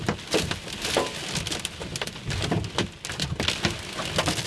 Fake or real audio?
real